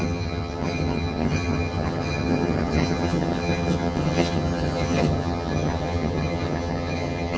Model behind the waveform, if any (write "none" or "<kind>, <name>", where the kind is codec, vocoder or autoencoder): vocoder, HiFi-GAN